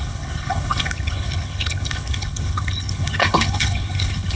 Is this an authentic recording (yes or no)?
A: no